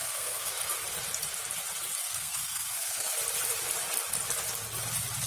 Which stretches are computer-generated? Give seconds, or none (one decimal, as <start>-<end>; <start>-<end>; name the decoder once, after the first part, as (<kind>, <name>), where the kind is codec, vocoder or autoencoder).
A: 0.0-0.5 (codec, SNAC); 2.0-3.2